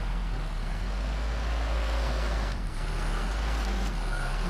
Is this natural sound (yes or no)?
no